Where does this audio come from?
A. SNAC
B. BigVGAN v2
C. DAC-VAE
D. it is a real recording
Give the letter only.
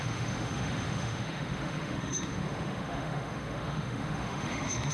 C